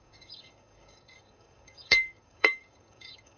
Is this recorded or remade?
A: remade